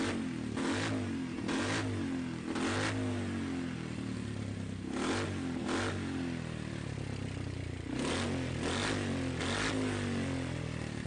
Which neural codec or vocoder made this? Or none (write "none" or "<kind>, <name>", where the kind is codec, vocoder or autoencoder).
none